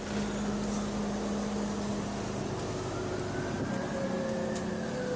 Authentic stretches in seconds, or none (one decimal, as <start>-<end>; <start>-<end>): 0.0-5.2